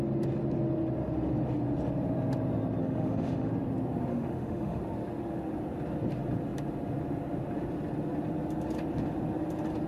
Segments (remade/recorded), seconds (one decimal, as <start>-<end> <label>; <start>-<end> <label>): 0.0-2.8 recorded; 2.8-3.5 remade; 3.5-4.1 recorded; 4.1-4.8 remade; 4.8-9.9 recorded